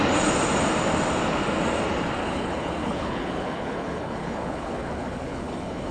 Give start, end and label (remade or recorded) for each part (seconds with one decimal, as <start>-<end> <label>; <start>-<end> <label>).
0.0-2.2 recorded; 2.2-5.9 remade